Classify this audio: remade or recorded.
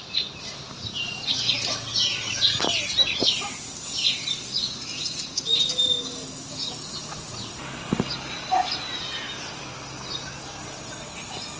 recorded